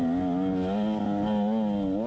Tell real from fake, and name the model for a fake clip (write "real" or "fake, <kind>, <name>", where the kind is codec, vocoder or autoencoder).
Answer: real